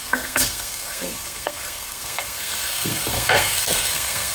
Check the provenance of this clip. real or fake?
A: fake